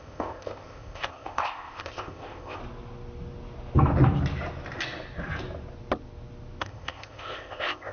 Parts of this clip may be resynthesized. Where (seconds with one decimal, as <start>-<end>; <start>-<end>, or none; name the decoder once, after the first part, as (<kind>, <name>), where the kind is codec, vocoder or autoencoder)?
0.0-2.6 (codec, ZipCodec); 6.6-7.9